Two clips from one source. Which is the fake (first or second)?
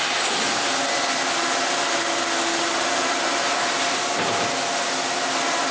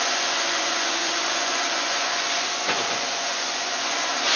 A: second